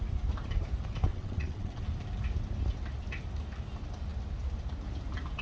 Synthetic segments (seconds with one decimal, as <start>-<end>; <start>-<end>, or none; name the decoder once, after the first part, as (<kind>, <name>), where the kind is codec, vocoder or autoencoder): 1.1-1.8 (vocoder, WaveNeXt)